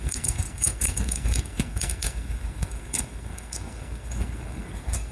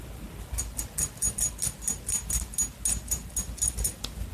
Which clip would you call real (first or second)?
second